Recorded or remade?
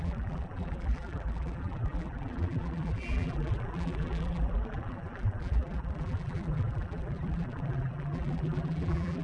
remade